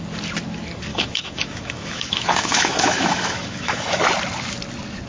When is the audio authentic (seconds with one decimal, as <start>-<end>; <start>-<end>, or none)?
0.0-0.9; 4.0-5.1